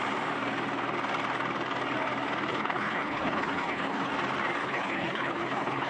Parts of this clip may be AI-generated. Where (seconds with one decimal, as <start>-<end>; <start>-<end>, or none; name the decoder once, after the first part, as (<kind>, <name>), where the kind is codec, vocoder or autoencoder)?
2.5-4.1 (codec, HILCodec); 4.6-5.9